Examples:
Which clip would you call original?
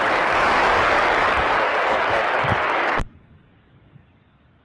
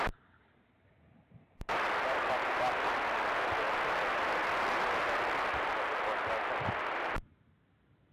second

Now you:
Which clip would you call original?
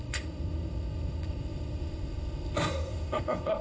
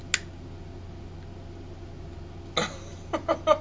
second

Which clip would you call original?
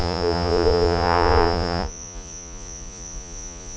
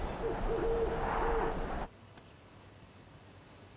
second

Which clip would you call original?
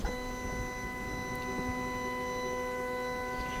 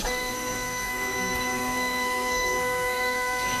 first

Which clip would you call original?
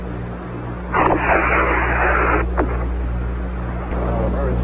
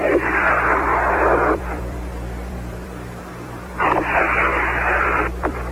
first